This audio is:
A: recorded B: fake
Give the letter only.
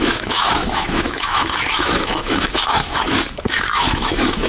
B